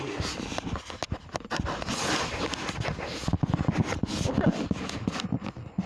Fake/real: real